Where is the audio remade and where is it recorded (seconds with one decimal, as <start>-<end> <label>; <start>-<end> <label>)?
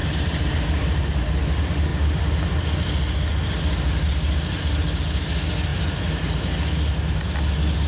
0.0-1.2 remade; 1.2-7.9 recorded